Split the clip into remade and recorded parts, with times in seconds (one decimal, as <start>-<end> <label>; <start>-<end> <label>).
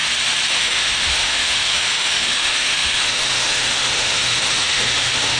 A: 0.0-0.5 recorded; 0.5-5.4 remade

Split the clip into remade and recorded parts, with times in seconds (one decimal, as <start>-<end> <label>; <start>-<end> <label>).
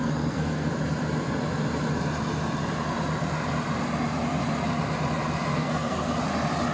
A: 0.0-0.7 remade; 0.7-5.5 recorded; 5.5-6.1 remade; 6.1-6.7 recorded